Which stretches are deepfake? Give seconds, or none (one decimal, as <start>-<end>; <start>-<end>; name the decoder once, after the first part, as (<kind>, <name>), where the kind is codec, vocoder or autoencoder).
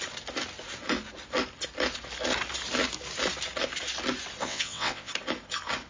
4.4-5.1 (vocoder, WaveNeXt)